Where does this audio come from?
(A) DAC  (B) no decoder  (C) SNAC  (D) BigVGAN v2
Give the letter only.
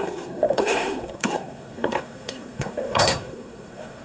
C